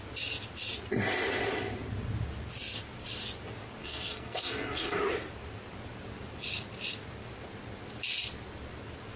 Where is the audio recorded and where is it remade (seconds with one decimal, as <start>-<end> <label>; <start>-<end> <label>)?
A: 0.0-3.8 recorded; 3.8-5.0 remade; 5.0-9.2 recorded